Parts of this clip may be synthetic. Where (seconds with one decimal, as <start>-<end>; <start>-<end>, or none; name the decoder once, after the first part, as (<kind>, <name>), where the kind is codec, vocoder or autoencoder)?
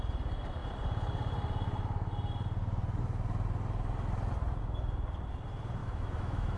5.8-6.6 (autoencoder, DAC-VAE)